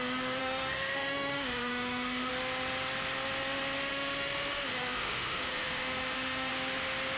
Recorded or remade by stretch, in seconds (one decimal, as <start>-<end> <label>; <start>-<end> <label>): 0.0-0.4 recorded; 0.4-2.3 remade; 2.3-3.8 recorded; 3.8-6.5 remade; 6.5-7.2 recorded